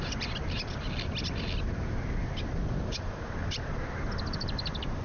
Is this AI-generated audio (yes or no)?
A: no